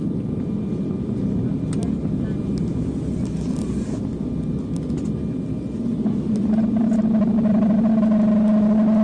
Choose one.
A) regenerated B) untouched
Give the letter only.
B